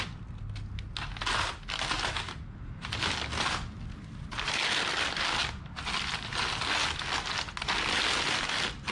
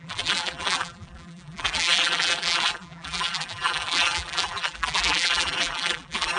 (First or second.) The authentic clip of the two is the first